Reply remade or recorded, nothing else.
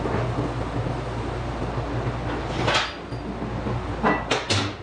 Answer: recorded